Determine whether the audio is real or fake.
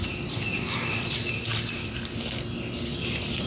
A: real